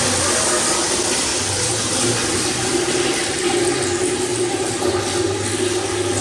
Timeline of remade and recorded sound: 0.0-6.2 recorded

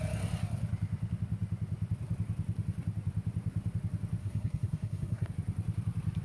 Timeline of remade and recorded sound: 0.0-4.2 recorded; 4.2-5.3 remade; 5.3-6.2 recorded

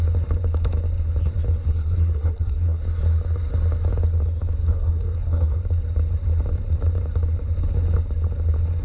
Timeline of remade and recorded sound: 0.0-1.7 recorded; 1.7-2.8 remade; 2.8-4.6 recorded; 4.6-5.6 remade; 5.6-8.8 recorded

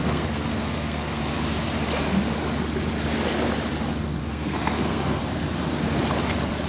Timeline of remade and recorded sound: 0.0-1.2 remade; 1.2-4.2 recorded; 4.2-5.2 remade; 5.2-6.7 recorded

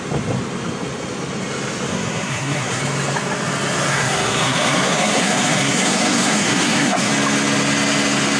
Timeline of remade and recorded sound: 0.0-1.9 recorded; 1.9-2.8 remade; 2.8-3.9 recorded; 3.9-7.1 remade; 7.1-8.4 recorded

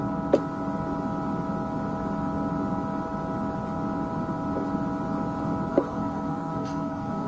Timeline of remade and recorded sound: 0.0-5.7 recorded; 5.7-7.3 remade

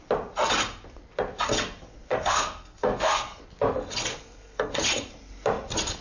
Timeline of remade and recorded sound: 0.0-2.1 recorded; 2.1-3.4 remade; 3.4-4.1 recorded; 4.1-4.7 remade; 4.7-6.0 recorded

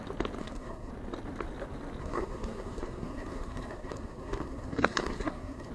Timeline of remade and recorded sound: 0.0-0.4 recorded; 0.4-0.9 remade; 0.9-2.0 recorded; 2.0-5.7 remade